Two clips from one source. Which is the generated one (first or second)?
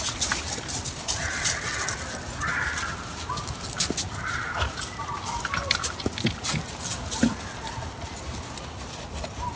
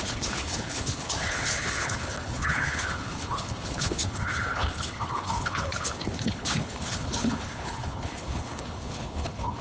second